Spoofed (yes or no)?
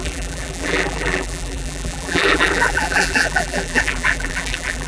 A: yes